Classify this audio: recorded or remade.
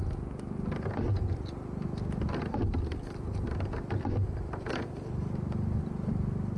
recorded